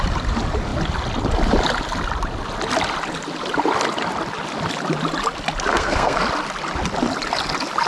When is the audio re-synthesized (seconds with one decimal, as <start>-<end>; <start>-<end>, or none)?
5.7-6.2